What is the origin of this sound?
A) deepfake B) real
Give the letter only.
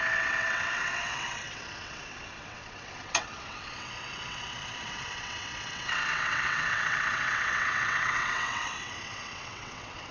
A